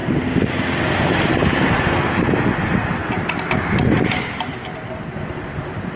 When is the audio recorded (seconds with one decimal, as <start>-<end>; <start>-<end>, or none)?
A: 0.0-1.2; 3.0-5.5